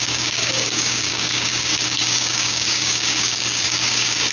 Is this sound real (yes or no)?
no